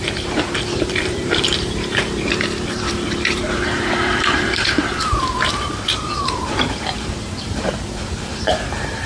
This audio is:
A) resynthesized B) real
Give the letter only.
A